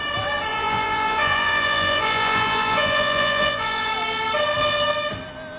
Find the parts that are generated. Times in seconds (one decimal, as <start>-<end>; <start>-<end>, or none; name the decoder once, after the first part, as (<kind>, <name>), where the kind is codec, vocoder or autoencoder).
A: 0.5-3.9 (vocoder, Vocos)